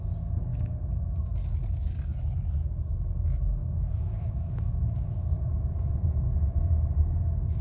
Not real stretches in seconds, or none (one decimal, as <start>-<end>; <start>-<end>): 3.6-5.9